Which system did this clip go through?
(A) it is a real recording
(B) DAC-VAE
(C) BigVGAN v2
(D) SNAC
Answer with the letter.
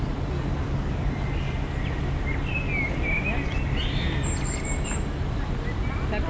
A